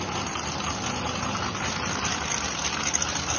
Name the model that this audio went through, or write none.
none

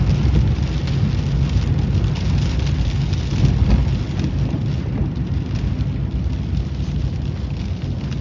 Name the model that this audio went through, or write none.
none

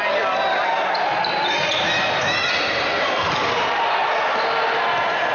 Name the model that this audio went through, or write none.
none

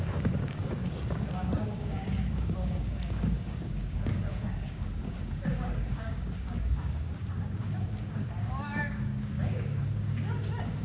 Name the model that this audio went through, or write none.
codec, DAC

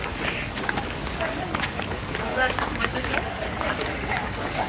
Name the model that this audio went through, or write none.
codec, DAC